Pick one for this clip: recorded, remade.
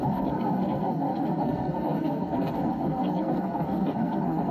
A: remade